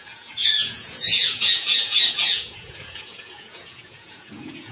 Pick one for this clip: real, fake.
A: fake